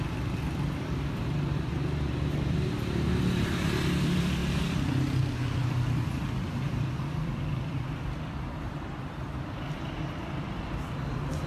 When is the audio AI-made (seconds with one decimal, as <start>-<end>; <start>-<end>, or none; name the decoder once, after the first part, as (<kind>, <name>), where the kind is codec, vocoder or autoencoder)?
0.0-4.4 (vocoder, BigVGAN v2); 5.2-11.5